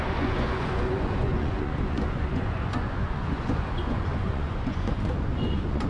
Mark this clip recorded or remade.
remade